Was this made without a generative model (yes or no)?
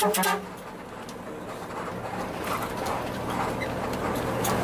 yes